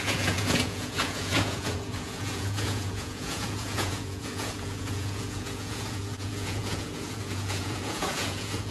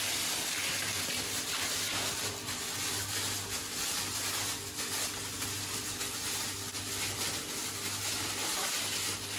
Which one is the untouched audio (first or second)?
second